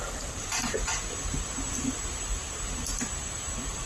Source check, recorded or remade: remade